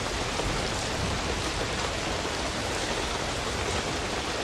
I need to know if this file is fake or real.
fake